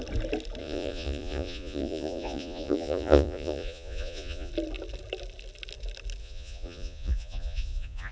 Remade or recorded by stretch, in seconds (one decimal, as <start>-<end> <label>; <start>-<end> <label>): 0.0-0.6 recorded; 0.6-4.5 remade; 4.5-6.2 recorded; 6.2-8.1 remade